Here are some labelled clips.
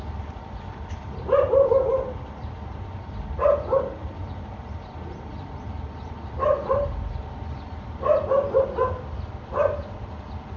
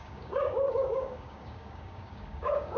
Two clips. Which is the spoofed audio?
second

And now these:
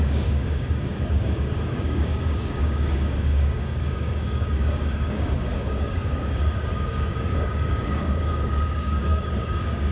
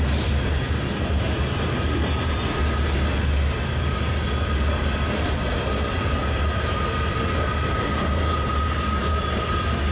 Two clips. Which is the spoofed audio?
first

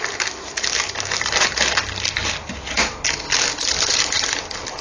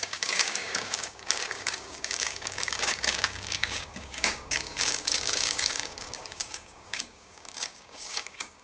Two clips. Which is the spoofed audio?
second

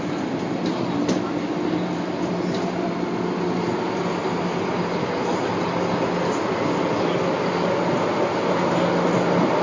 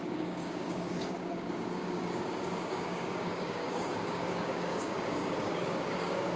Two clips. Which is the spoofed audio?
second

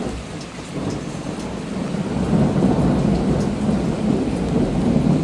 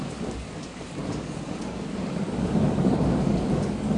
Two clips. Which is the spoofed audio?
second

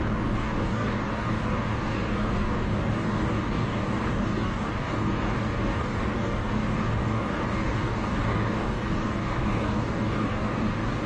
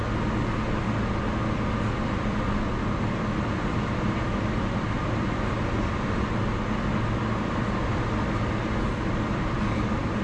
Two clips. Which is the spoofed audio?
first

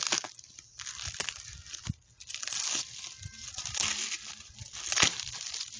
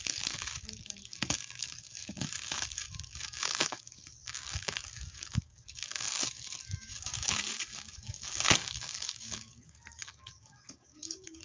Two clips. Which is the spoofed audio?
second